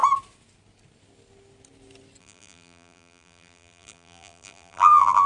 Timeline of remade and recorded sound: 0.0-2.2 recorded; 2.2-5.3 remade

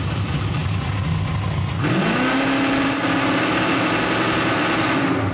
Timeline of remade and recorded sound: 0.0-0.6 remade; 0.6-3.5 recorded; 3.5-5.3 remade

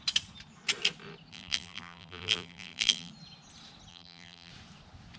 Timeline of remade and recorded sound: 0.0-1.3 recorded; 1.3-3.1 remade; 3.1-3.9 recorded; 3.9-4.5 remade; 4.5-5.2 recorded

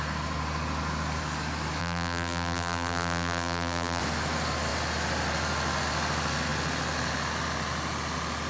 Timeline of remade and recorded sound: 0.0-1.8 recorded; 1.8-4.0 remade; 4.0-8.5 recorded

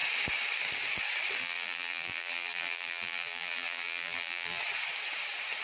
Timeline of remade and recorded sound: 0.0-1.4 recorded; 1.4-4.6 remade; 4.6-5.6 recorded

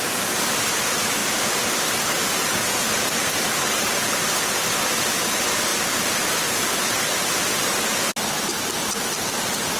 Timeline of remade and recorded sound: 0.0-1.2 recorded; 1.2-2.2 remade; 2.2-9.8 recorded